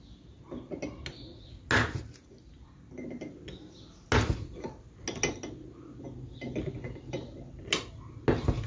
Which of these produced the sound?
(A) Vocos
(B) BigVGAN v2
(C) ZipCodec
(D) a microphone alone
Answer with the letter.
D